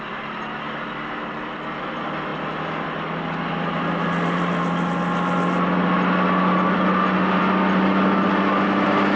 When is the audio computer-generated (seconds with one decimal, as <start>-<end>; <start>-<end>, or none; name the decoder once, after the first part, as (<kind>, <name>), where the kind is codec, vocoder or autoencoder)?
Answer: none